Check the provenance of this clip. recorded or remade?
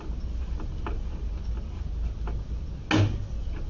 recorded